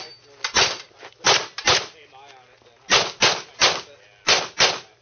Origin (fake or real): real